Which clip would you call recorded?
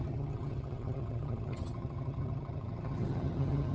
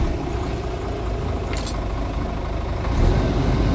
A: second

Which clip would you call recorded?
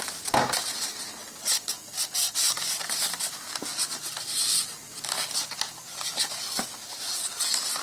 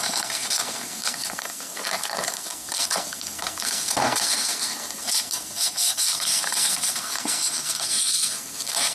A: first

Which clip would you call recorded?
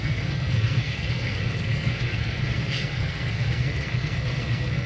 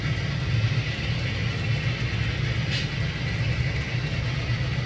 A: second